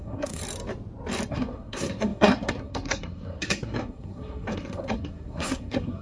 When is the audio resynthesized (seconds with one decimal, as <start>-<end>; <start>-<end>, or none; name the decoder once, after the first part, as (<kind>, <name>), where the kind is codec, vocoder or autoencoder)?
0.0-0.4 (codec, SNAC); 1.3-6.0